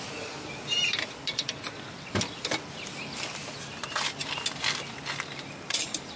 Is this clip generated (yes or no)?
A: no